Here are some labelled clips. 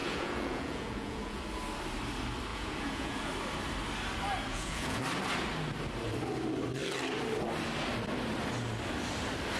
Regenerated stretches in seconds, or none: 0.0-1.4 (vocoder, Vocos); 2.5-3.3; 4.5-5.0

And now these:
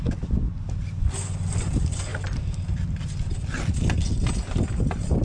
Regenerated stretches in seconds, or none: none

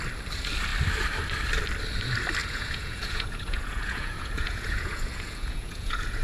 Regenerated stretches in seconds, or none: 2.4-6.2 (vocoder, Vocos)

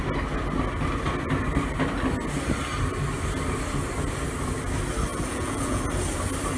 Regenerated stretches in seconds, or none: 5.1-5.8 (vocoder, Vocos)

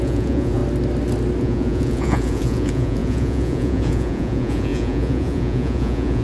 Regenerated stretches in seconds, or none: 0.0-0.6 (vocoder, Vocos); 1.4-6.2

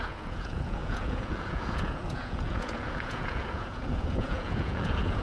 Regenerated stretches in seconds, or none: 0.0-5.2 (vocoder, Vocos)